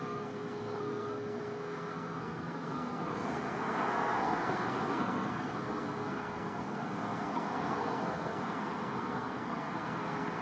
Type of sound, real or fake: fake